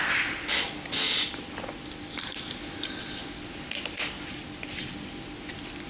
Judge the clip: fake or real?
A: real